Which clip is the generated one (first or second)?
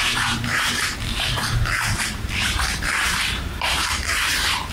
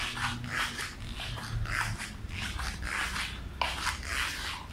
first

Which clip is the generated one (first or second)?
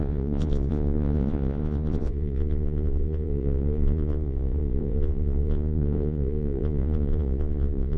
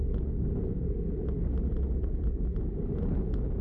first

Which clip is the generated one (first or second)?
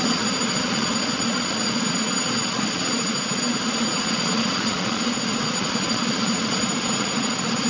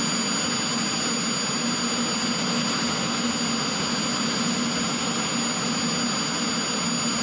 first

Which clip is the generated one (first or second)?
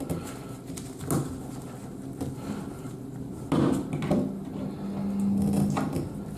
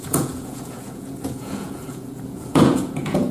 second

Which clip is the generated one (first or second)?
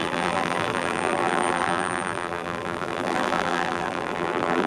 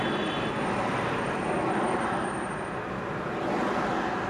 first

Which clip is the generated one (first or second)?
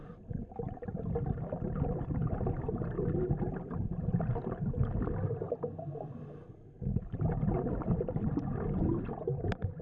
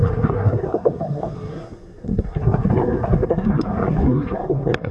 second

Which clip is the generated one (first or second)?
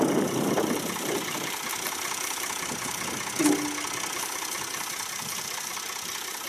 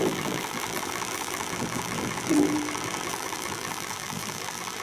second